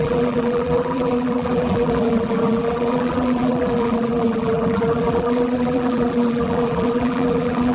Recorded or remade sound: remade